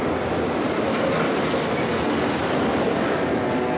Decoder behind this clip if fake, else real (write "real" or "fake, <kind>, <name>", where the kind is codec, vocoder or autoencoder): real